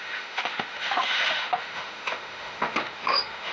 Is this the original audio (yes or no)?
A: no